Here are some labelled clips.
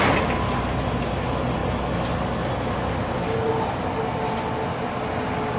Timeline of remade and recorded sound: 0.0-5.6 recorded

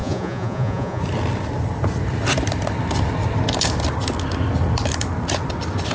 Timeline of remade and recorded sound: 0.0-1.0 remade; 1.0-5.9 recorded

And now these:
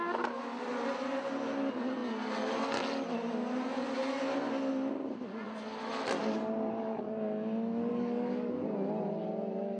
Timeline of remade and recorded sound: 0.0-6.2 recorded; 6.2-7.0 remade; 7.0-7.9 recorded; 7.9-8.5 remade; 8.5-9.8 recorded

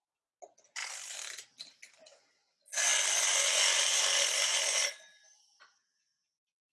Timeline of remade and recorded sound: 0.0-6.7 recorded

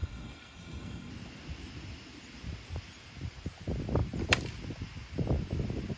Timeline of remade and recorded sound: 0.0-1.1 remade; 1.1-6.0 recorded

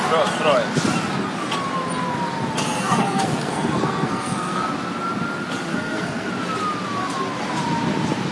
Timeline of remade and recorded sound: 0.0-2.8 recorded; 2.8-4.7 remade; 4.7-5.7 recorded; 5.7-6.3 remade; 6.3-8.3 recorded

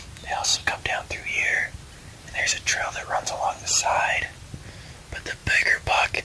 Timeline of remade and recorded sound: 0.0-0.5 recorded; 0.5-4.2 remade; 4.2-5.4 recorded; 5.4-6.2 remade

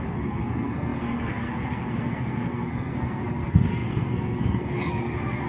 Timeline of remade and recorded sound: 0.0-5.5 remade